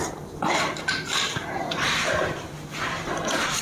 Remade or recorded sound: recorded